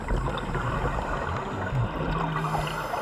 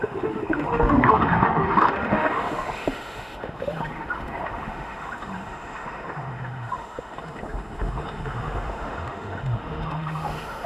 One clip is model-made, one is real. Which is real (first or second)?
first